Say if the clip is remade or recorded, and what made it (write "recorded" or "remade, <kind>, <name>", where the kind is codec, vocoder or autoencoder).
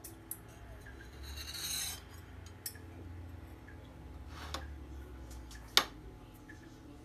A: recorded